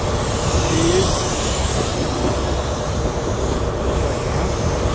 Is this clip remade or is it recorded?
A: recorded